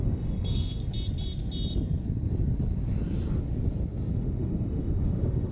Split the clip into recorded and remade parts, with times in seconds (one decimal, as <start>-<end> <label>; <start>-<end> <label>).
0.0-0.8 remade; 0.8-4.1 recorded; 4.1-5.5 remade